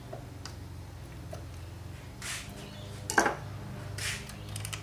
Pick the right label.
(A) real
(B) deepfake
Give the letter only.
A